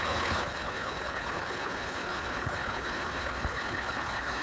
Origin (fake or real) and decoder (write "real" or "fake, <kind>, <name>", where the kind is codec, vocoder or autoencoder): fake, codec, HILCodec